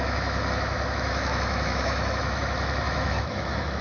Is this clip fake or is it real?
fake